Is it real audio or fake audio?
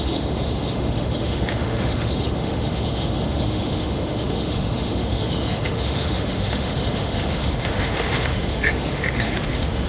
fake